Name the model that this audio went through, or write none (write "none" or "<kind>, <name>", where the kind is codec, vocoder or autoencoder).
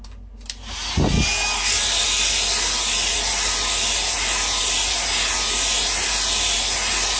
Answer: none